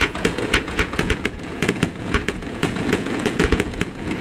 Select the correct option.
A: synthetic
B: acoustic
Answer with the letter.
A